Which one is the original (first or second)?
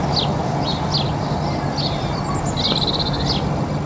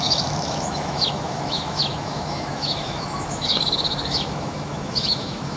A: first